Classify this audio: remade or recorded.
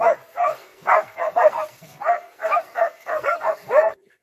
remade